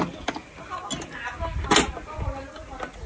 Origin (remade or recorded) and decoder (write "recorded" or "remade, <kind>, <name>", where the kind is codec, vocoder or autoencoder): recorded